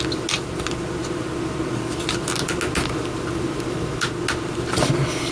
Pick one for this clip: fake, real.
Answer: real